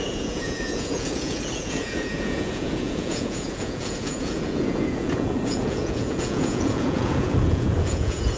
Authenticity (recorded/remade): remade